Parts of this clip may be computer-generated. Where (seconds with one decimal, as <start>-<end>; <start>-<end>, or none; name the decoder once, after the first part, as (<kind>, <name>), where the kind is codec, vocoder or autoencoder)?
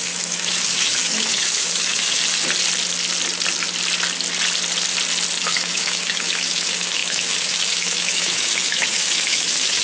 0.0-2.2 (autoencoder, DAC-VAE); 5.4-9.8